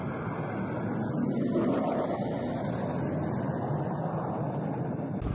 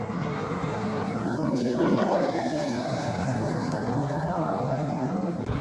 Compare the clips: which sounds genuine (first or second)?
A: first